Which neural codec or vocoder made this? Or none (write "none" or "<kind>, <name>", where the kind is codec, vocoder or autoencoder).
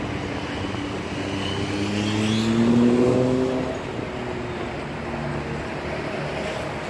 none